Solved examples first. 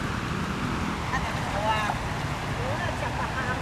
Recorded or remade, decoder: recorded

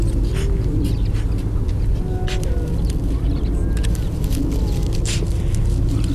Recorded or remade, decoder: recorded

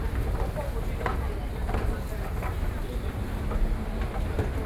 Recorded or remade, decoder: recorded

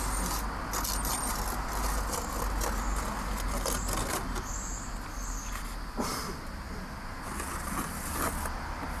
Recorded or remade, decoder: recorded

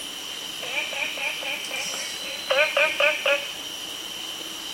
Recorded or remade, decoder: recorded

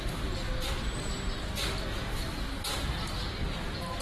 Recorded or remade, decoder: recorded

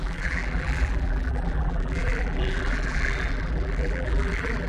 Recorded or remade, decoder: remade, vocoder, BigVGAN v2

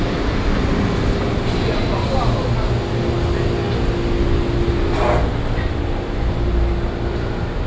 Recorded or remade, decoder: recorded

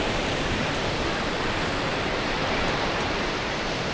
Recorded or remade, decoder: remade, vocoder, BigVGAN v2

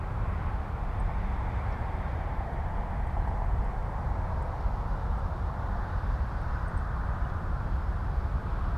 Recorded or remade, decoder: recorded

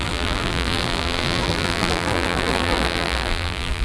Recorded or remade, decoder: remade, vocoder, BigVGAN v2